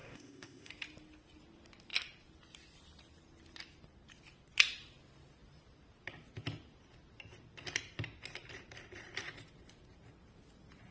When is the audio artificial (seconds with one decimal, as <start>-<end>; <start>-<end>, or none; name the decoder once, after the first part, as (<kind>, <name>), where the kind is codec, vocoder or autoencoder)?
0.0-0.7 (codec, ZipCodec)